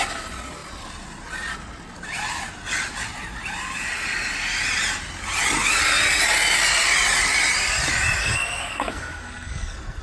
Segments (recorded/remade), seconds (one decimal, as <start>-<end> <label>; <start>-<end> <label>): 0.0-8.2 recorded; 8.2-10.0 remade